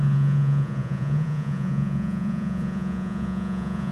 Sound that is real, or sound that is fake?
fake